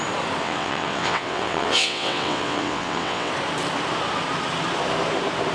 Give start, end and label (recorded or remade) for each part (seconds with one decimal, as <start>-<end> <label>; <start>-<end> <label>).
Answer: 0.0-0.4 recorded; 0.4-3.3 remade; 3.3-5.5 recorded